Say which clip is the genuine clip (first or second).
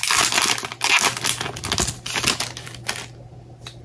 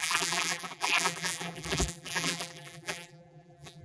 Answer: first